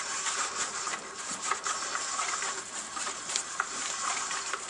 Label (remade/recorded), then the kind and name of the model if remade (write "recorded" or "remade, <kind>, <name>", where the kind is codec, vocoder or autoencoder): remade, vocoder, BigVGAN v2